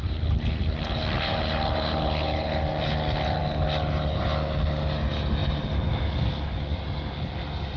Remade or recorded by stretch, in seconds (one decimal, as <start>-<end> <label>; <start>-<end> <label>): 0.0-7.8 recorded